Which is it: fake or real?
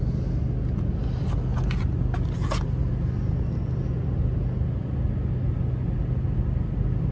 real